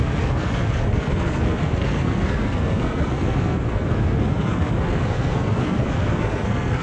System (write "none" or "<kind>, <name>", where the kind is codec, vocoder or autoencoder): codec, SNAC